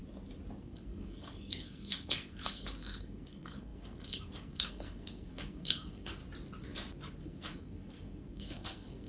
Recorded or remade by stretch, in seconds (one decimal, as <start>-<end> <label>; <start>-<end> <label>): 0.0-0.6 recorded; 0.6-6.2 remade; 6.2-7.2 recorded; 7.2-9.1 remade